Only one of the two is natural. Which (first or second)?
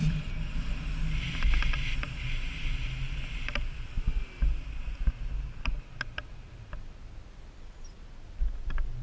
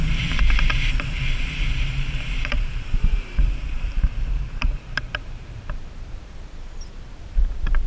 first